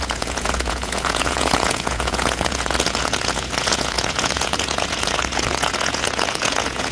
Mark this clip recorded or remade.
remade